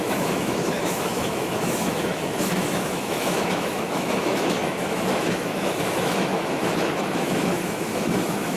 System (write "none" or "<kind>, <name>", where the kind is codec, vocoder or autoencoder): autoencoder, DAC-VAE